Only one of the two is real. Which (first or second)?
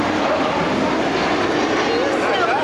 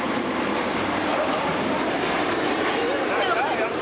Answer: first